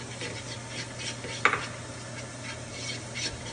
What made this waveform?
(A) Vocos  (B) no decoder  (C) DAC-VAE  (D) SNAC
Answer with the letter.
B